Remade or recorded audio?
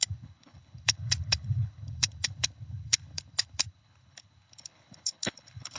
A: remade